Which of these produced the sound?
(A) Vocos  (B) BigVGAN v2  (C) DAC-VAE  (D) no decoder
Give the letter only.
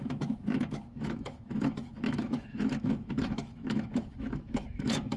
C